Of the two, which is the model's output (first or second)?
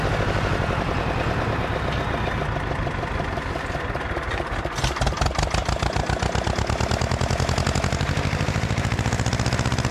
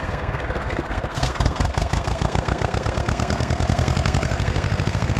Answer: second